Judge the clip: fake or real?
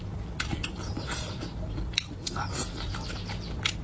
real